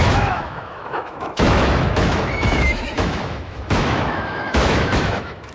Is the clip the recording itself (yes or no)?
no